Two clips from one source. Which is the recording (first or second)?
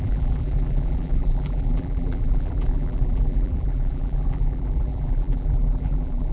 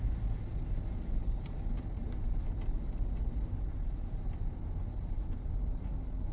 second